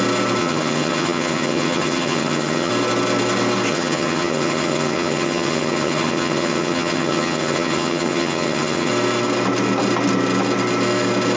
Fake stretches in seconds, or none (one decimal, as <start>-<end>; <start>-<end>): 0.4-2.7; 3.7-8.9